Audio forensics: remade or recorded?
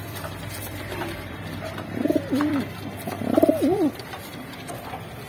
remade